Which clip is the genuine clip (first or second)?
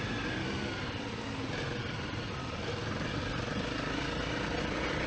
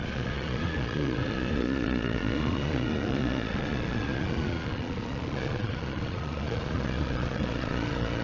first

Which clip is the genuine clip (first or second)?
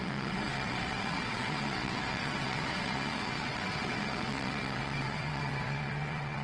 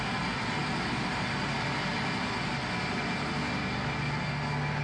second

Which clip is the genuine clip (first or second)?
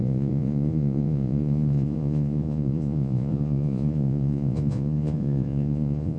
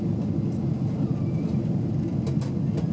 second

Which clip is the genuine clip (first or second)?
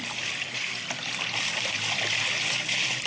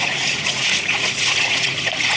first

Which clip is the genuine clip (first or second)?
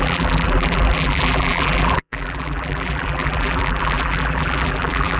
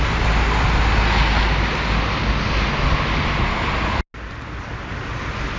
second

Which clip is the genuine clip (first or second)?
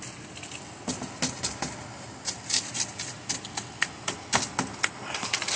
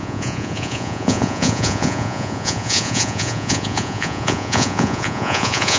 first